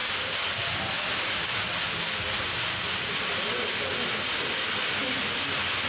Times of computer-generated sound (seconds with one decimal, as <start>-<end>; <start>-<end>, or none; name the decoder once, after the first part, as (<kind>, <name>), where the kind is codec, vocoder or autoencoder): none